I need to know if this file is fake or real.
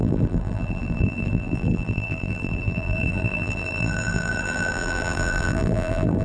fake